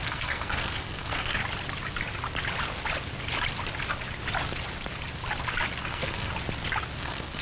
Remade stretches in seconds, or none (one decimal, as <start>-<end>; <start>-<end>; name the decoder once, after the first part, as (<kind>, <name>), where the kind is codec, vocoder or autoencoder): 0.0-1.4 (codec, SNAC); 5.8-6.3; 7.0-7.4